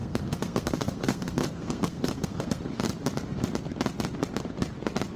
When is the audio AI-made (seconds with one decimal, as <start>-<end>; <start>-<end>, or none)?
0.0-2.6